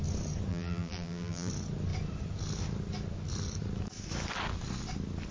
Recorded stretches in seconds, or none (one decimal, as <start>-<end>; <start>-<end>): 0.0-0.5; 1.5-5.3

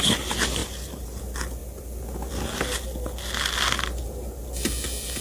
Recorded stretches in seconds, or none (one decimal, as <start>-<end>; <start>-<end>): 0.0-0.6; 1.2-5.2

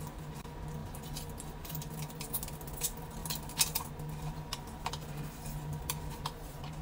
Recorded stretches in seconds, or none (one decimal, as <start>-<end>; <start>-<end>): 0.0-6.8

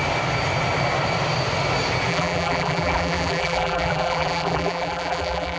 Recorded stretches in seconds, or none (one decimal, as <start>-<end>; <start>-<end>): 0.0-2.1

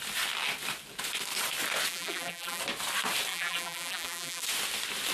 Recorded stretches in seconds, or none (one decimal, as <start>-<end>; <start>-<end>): 0.0-1.9; 2.6-3.3; 4.4-5.1

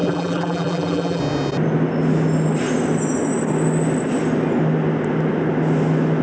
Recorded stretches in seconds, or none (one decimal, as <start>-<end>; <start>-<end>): 1.2-6.2

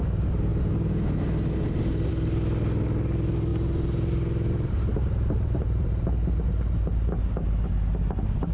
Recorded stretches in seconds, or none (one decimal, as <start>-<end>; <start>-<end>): 0.0-3.5; 5.9-8.5

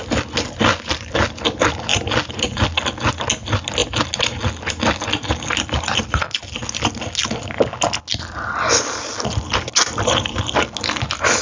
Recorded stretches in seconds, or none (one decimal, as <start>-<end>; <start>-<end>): 0.0-1.9; 2.6-11.4